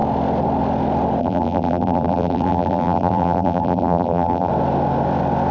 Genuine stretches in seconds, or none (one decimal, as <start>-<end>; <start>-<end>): 0.0-1.2; 4.5-5.5